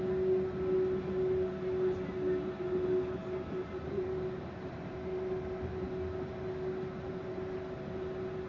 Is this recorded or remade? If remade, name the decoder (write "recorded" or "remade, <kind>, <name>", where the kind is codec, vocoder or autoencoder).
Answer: recorded